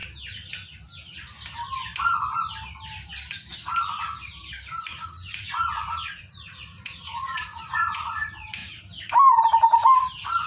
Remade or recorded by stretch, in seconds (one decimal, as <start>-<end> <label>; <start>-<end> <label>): 0.0-4.8 recorded; 4.8-8.6 remade; 8.6-10.5 recorded